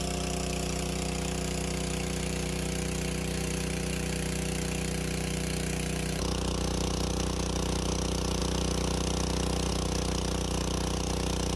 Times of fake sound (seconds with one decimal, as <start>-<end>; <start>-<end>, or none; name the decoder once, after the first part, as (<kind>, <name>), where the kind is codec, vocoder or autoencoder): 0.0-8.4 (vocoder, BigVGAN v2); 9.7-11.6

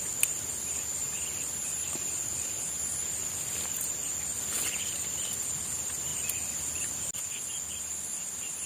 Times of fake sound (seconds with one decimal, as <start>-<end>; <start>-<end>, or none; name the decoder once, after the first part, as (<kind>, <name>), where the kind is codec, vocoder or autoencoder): none

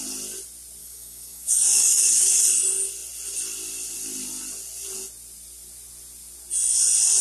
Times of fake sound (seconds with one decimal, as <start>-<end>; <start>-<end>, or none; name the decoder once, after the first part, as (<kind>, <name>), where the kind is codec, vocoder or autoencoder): 0.8-2.4 (codec, DAC)

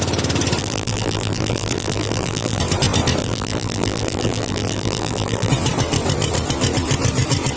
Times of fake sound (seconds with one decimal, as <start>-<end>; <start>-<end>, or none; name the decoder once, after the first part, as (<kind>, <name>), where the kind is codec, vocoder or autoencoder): 0.6-2.6 (vocoder, BigVGAN v2); 3.2-5.5